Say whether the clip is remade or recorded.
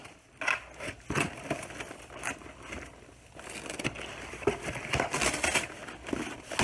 recorded